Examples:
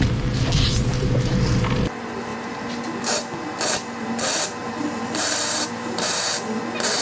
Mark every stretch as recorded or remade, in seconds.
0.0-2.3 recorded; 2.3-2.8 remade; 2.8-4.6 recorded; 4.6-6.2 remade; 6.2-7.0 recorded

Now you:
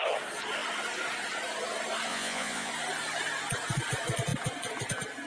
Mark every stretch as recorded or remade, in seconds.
0.0-2.1 recorded; 2.1-2.7 remade; 2.7-5.3 recorded

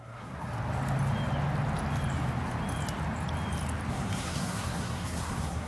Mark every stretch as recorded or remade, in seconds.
0.0-0.5 remade; 0.5-3.9 recorded; 3.9-5.7 remade